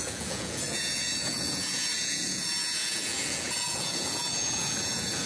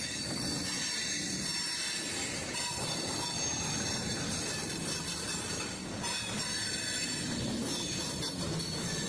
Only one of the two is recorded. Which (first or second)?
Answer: second